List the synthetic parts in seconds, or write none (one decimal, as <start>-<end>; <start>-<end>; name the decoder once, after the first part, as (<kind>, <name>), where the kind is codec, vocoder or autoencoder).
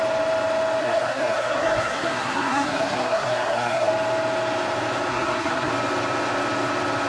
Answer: 0.8-3.9 (codec, SNAC); 5.1-5.7